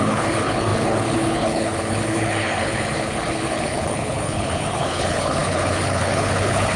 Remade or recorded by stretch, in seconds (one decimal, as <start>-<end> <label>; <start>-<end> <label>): 0.0-6.8 remade